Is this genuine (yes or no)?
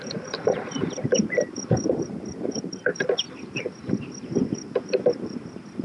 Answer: no